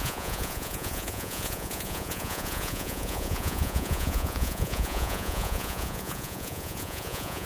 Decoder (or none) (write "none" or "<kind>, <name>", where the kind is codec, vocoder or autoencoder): vocoder, Vocos